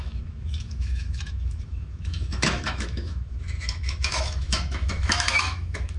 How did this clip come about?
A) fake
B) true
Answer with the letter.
A